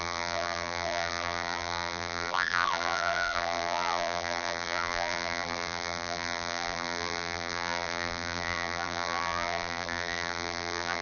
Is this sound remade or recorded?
remade